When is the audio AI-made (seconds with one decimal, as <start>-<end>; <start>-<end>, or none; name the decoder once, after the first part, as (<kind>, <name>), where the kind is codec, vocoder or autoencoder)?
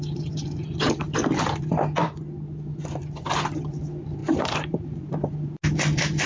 4.2-5.1 (vocoder, BigVGAN v2)